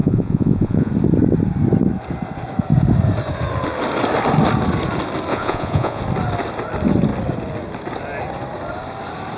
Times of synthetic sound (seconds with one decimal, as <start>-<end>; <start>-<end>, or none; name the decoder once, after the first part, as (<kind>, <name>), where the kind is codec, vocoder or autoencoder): 0.0-0.9 (vocoder, Vocos); 5.3-6.0